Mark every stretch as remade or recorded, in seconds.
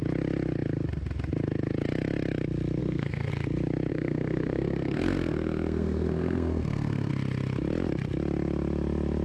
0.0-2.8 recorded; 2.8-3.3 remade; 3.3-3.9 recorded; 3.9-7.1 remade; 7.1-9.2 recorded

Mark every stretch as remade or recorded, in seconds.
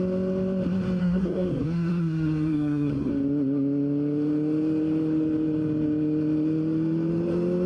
0.0-1.0 recorded; 1.0-3.1 remade; 3.1-7.7 recorded